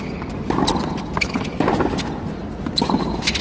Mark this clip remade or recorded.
recorded